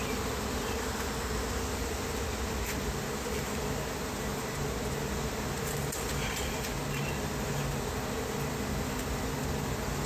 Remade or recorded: recorded